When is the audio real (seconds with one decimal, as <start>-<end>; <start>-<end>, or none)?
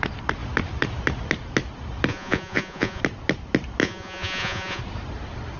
0.0-2.1; 3.0-3.8; 4.8-5.6